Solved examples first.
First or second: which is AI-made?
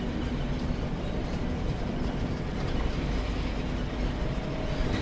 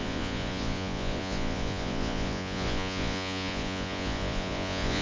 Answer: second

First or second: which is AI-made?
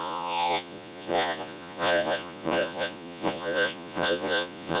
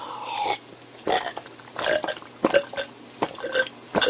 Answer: first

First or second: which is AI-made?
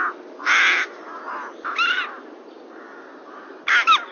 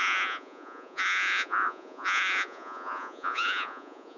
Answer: second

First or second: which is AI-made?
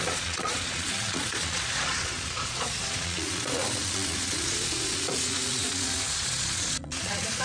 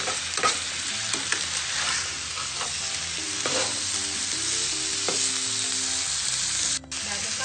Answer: first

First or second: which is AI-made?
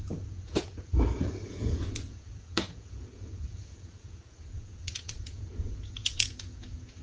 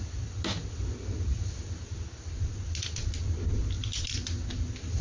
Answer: first